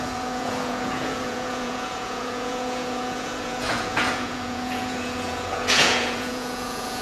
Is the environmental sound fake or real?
fake